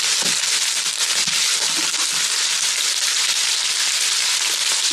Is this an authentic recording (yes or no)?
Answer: yes